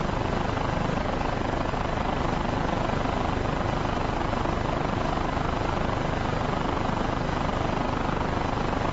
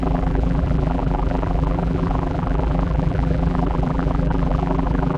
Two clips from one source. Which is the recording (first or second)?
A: first